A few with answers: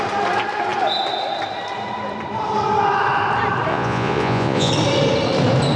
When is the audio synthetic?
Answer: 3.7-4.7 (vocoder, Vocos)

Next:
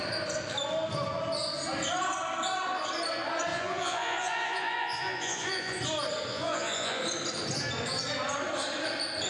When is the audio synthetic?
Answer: 3.5-5.8 (vocoder, Vocos); 6.3-7.0

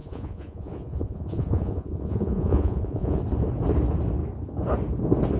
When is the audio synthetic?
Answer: 0.0-3.2 (vocoder, Vocos)

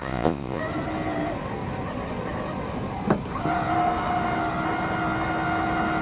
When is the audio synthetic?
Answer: 0.0-0.6 (vocoder, Vocos)

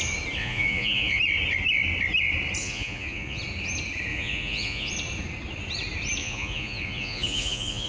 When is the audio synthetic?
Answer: 0.4-1.2 (vocoder, Vocos); 2.6-3.4; 4.1-4.9; 6.2-7.9

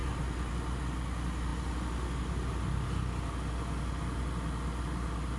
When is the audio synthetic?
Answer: none

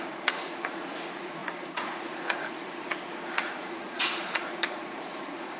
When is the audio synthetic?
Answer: 0.0-5.6 (vocoder, Vocos)

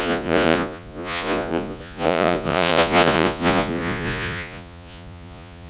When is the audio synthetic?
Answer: 0.0-5.7 (vocoder, Vocos)